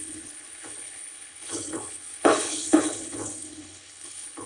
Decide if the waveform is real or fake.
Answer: fake